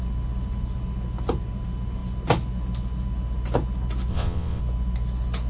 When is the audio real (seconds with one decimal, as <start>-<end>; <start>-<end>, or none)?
0.0-4.1; 4.6-5.5